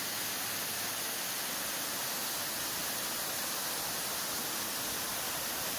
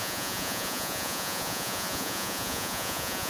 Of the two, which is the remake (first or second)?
second